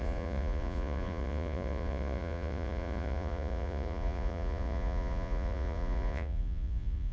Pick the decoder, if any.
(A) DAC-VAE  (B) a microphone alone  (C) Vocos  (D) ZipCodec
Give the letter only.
C